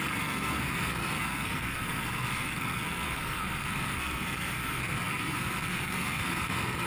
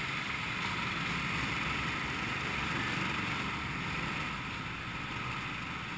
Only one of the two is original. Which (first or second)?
second